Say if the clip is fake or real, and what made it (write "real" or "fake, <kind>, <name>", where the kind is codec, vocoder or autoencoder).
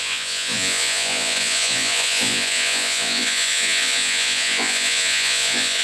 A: fake, vocoder, Vocos